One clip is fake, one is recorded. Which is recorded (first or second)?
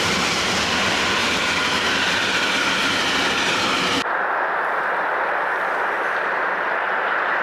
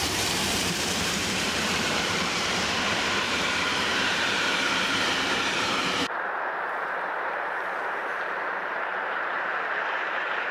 first